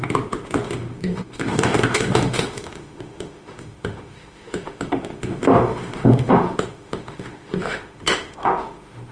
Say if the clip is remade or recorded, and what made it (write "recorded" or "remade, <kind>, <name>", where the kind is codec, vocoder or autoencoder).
remade, autoencoder, DAC-VAE